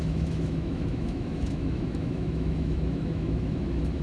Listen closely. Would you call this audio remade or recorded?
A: remade